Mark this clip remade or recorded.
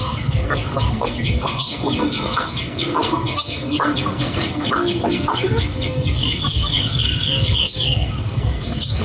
remade